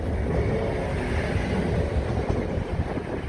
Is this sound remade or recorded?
recorded